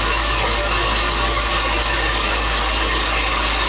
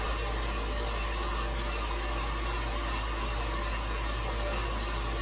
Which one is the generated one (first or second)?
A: first